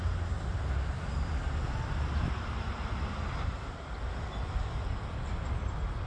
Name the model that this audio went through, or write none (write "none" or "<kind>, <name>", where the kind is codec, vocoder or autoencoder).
none